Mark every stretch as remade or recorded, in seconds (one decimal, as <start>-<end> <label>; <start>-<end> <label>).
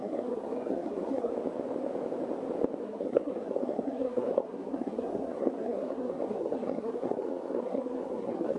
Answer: 0.0-1.3 remade; 1.3-2.8 recorded; 2.8-8.6 remade